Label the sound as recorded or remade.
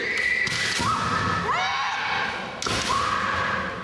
recorded